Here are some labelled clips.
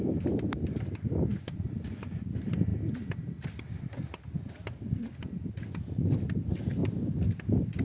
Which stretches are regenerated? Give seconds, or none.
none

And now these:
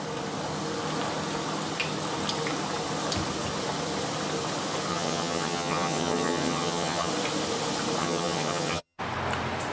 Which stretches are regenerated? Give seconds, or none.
4.9-7.1 (vocoder, HiFi-GAN); 8.0-9.0

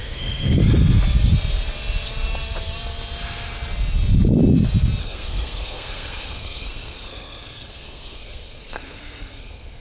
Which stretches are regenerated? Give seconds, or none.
0.0-0.6 (codec, SNAC); 5.0-9.8

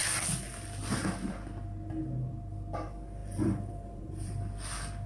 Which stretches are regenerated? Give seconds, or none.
3.2-4.3 (vocoder, BigVGAN v2)

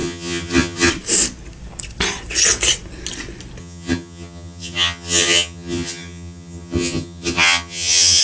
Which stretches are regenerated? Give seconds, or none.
0.0-0.9 (vocoder, HiFi-GAN); 3.6-8.2